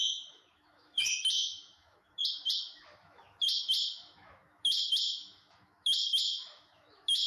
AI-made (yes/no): yes